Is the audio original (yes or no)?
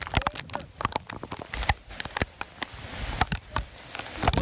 yes